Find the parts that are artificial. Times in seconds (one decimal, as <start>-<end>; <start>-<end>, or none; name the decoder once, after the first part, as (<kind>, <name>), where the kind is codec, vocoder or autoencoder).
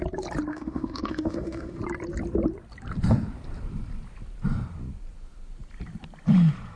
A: 0.5-1.8 (autoencoder, DAC-VAE)